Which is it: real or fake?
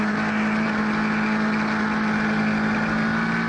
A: real